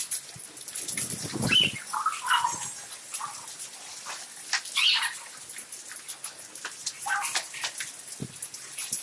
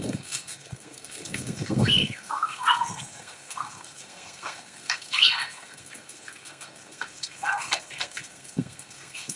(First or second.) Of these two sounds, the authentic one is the first